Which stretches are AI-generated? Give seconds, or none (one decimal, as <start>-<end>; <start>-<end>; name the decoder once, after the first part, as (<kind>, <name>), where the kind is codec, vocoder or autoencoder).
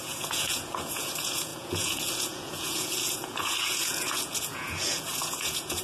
0.0-5.8 (vocoder, Vocos)